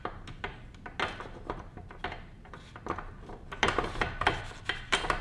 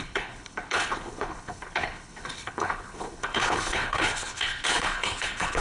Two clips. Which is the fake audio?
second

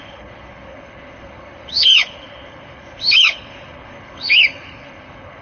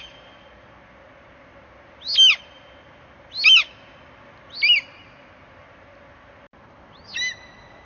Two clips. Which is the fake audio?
first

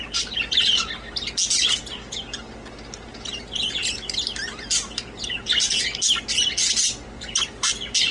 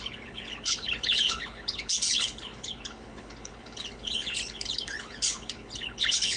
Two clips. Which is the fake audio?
second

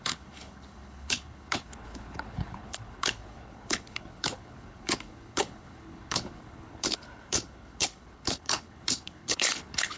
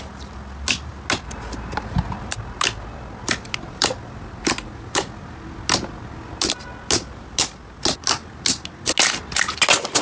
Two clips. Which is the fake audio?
first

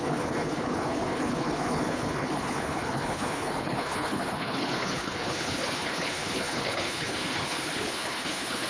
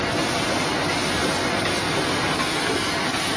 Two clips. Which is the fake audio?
first